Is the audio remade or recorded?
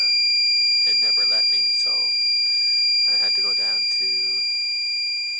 recorded